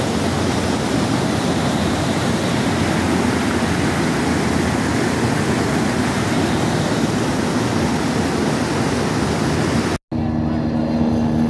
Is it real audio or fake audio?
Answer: real